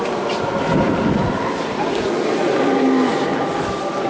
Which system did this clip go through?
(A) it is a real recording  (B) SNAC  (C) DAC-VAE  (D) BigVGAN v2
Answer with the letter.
A